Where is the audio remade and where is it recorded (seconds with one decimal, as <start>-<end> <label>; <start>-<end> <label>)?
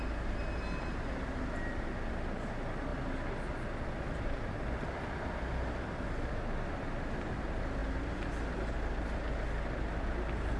0.0-10.6 recorded